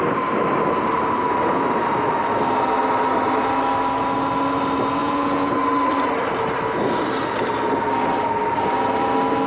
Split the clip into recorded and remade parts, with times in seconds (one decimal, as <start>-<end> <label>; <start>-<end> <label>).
0.0-5.0 recorded; 5.0-5.5 remade; 5.5-9.5 recorded